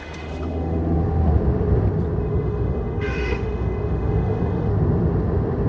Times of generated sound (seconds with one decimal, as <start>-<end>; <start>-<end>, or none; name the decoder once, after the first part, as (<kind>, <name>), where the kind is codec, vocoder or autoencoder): 0.0-0.8 (autoencoder, DAC-VAE); 2.2-4.7

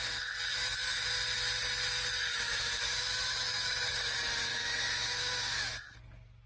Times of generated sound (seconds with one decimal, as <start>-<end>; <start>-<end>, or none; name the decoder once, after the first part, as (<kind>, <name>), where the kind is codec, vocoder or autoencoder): 0.5-1.1 (autoencoder, DAC-VAE); 2.3-4.0; 4.5-5.7

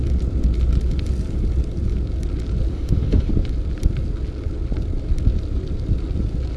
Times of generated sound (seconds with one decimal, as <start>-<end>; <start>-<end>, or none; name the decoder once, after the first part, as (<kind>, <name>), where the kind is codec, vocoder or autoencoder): 2.7-3.3 (autoencoder, DAC-VAE)

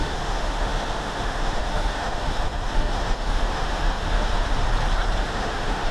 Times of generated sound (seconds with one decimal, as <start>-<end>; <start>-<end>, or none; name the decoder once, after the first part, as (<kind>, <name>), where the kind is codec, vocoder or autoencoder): 0.0-4.6 (autoencoder, DAC-VAE); 5.2-5.9

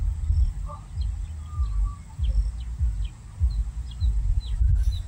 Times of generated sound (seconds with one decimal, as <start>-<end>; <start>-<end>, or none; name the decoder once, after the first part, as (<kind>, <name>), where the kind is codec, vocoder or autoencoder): none

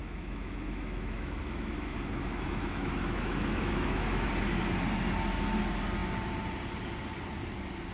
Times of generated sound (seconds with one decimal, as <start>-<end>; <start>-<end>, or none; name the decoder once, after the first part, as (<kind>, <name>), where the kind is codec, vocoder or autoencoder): 0.0-4.3 (autoencoder, DAC-VAE)

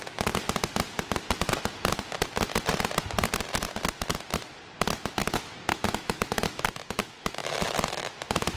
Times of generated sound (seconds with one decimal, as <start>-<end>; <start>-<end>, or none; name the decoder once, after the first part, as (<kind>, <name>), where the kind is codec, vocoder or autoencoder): 0.0-0.4 (autoencoder, DAC-VAE); 5.2-8.6

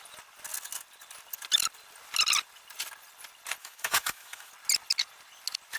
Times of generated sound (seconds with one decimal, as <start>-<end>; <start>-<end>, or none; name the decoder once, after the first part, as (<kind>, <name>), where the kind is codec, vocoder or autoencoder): 3.6-4.5 (autoencoder, DAC-VAE)